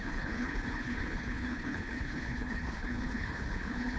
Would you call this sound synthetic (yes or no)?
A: yes